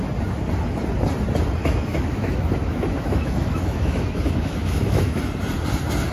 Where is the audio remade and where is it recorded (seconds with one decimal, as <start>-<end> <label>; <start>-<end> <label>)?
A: 0.0-1.6 recorded; 1.6-5.2 remade; 5.2-6.1 recorded